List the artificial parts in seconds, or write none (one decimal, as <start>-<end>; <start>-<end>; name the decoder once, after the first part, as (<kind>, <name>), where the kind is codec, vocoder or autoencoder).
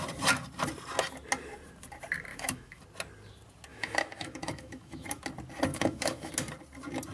2.3-2.8 (autoencoder, DAC-VAE); 3.7-5.2; 5.7-6.3